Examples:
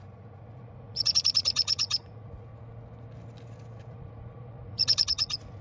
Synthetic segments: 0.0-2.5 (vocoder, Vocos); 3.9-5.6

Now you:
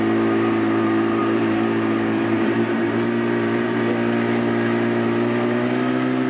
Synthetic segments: 1.2-3.8 (vocoder, BigVGAN v2)

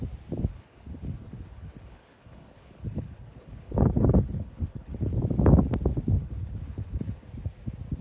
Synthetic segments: 0.5-5.2 (codec, HILCodec); 6.2-7.2

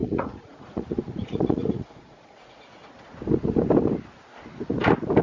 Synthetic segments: 0.0-2.9 (vocoder, Vocos)